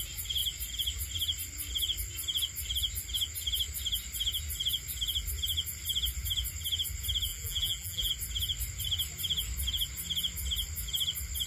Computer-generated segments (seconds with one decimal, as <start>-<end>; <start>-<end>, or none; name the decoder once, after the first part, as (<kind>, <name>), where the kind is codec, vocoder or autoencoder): 7.3-8.1 (vocoder, BigVGAN v2)